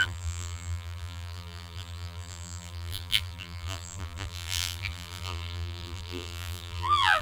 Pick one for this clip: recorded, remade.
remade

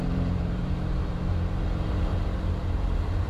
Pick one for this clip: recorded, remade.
remade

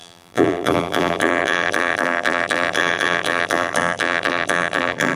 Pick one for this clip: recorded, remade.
remade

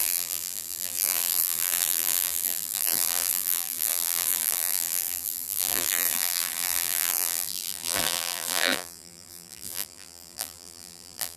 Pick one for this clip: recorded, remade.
remade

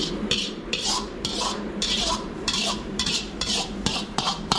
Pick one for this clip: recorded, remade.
remade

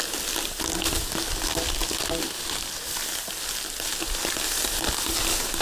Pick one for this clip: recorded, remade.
recorded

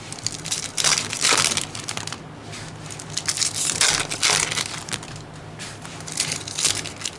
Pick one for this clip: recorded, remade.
recorded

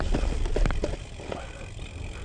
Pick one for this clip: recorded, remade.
recorded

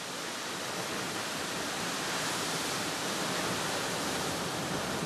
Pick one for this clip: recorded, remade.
remade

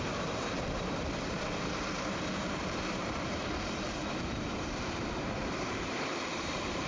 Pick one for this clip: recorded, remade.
remade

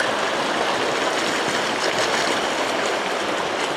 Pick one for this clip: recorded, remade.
recorded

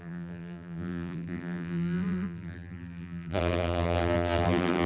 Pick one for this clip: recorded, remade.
remade